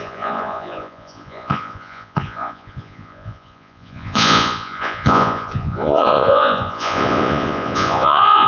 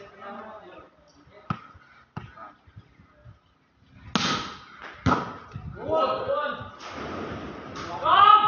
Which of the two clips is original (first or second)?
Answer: second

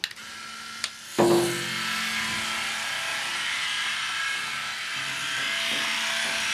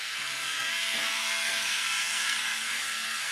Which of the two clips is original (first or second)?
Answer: first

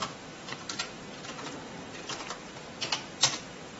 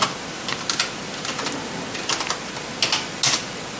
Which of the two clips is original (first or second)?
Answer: second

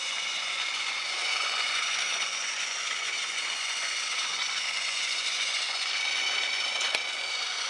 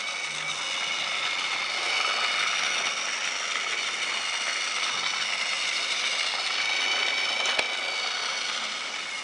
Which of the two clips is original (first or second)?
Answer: second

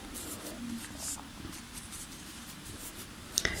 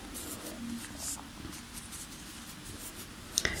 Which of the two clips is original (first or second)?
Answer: second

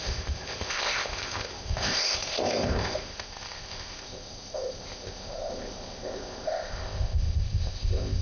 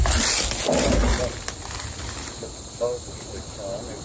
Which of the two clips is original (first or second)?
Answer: second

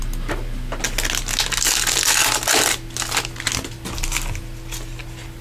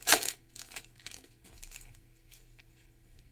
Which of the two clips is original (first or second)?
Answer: first